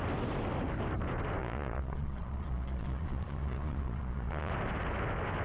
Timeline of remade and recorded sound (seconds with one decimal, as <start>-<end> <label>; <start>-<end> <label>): 0.0-1.4 recorded; 1.4-4.5 remade; 4.5-5.4 recorded

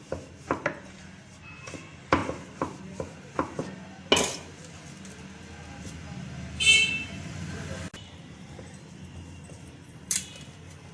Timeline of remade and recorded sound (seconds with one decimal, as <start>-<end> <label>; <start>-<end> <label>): 0.0-8.0 recorded; 8.0-8.8 remade; 8.8-10.9 recorded